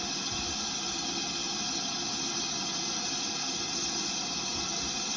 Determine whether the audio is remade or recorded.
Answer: recorded